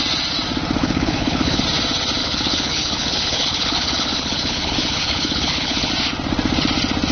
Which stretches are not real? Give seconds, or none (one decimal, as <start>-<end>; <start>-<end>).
0.8-1.6; 2.2-5.9